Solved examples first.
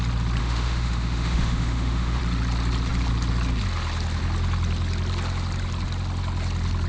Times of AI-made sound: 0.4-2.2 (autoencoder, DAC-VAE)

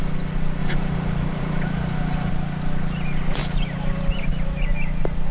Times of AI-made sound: 0.6-2.3 (vocoder, BigVGAN v2); 3.4-4.3

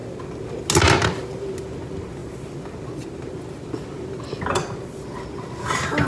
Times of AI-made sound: none

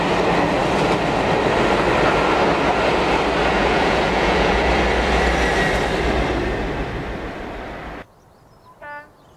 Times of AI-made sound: 3.5-4.6 (vocoder, Vocos)

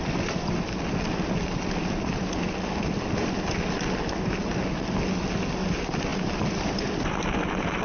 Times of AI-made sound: none

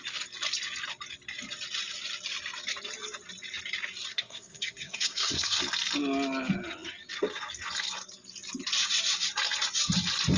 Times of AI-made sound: 4.1-5.6 (codec, SNAC)

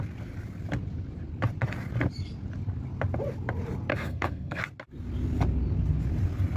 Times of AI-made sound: 3.9-4.6 (codec, SNAC)